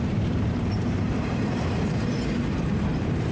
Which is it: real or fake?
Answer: fake